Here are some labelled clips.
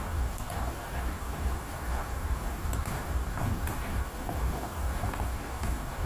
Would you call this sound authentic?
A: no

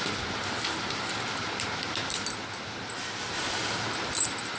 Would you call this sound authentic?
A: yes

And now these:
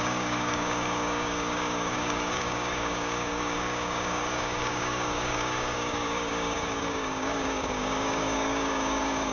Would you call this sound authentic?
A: no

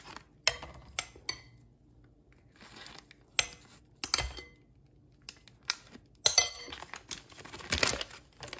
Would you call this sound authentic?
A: yes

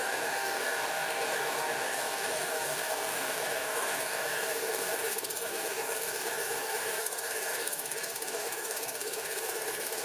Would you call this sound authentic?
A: no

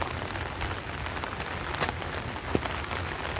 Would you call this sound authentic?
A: yes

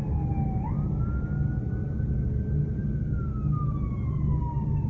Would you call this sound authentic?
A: yes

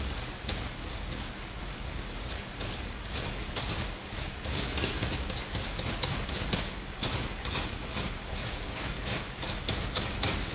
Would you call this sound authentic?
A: no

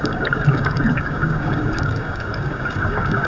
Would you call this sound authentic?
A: no